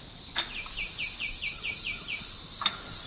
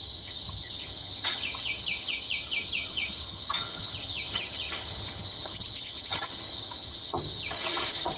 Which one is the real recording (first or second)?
first